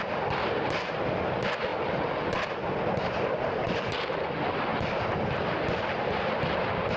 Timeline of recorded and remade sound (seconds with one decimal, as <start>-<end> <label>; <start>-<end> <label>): 0.0-7.0 recorded